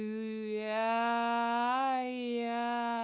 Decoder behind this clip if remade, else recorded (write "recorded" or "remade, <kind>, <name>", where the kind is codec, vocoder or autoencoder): recorded